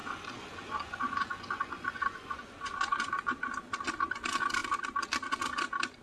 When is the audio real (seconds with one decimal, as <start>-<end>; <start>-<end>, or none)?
3.5-6.0